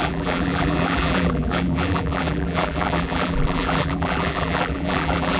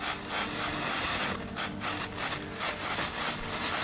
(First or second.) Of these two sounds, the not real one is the first